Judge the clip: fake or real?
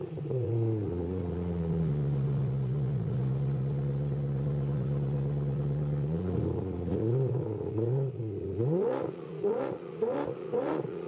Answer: fake